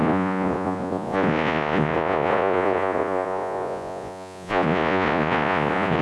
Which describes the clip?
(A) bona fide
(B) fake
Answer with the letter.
B